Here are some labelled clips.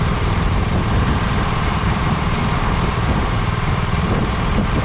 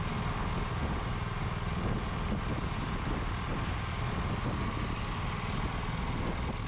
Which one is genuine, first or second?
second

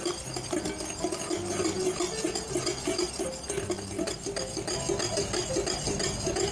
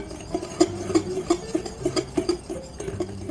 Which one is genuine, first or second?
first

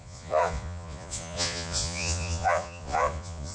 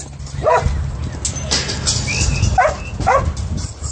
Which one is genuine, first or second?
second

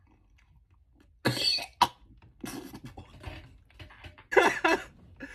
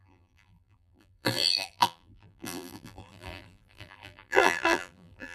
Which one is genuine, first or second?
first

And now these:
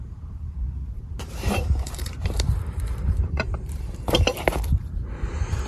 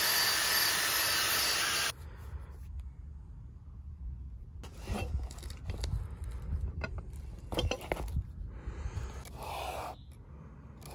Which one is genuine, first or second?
second